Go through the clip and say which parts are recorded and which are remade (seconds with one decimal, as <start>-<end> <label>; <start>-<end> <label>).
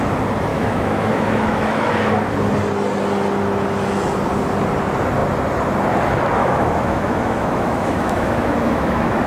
0.0-0.5 recorded; 0.5-2.1 remade; 2.1-6.4 recorded; 6.4-9.3 remade